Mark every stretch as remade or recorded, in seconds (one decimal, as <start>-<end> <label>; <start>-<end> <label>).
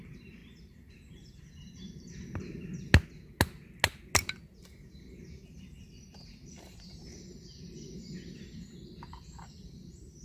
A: 0.0-2.7 remade; 2.7-5.5 recorded; 5.5-10.2 remade